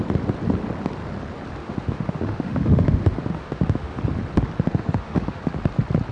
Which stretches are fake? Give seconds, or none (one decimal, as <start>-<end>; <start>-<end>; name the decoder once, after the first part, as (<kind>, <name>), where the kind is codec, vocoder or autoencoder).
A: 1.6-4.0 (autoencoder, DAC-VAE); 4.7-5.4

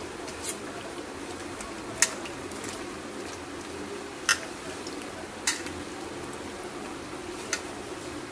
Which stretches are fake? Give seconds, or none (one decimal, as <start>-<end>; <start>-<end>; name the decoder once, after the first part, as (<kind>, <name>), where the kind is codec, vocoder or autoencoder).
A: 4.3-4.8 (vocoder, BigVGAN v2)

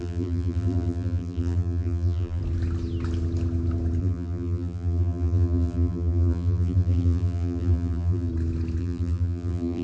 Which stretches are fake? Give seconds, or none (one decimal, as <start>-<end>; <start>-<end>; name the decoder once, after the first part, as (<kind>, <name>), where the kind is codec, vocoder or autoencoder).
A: 0.0-2.4 (vocoder, BigVGAN v2); 4.0-8.3; 8.8-9.8

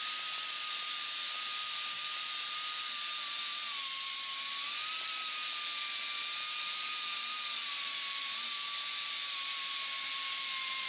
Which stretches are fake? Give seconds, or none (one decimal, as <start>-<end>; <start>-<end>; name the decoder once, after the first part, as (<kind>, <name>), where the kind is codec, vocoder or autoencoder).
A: none

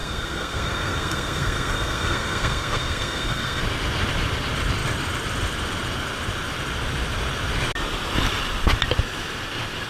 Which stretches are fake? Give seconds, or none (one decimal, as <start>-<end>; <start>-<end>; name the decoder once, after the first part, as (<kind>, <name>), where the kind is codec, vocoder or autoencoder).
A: 0.0-3.6 (codec, SNAC)

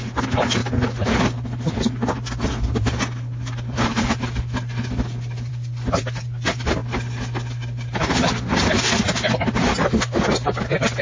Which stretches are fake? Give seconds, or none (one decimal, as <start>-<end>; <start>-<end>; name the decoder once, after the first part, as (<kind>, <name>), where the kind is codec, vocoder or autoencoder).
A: none

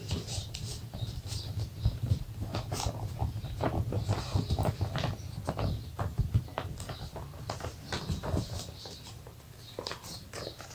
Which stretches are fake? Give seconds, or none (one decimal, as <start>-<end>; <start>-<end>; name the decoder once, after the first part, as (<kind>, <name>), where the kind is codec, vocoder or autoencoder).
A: 0.0-2.5 (vocoder, BigVGAN v2); 5.5-6.5; 9.4-10.7